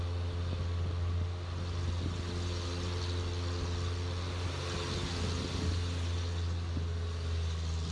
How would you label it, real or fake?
real